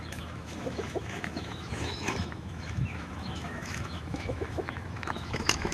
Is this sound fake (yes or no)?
yes